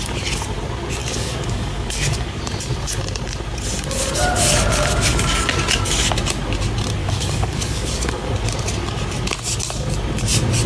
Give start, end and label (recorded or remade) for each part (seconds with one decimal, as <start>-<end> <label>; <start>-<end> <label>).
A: 0.0-1.0 recorded; 1.0-2.4 remade; 2.4-7.0 recorded; 7.0-8.3 remade; 8.3-10.7 recorded